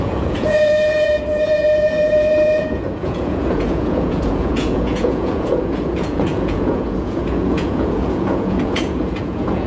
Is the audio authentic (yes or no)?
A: no